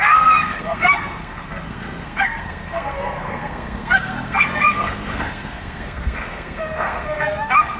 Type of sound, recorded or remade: remade